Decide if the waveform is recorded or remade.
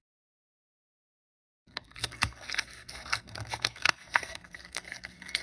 remade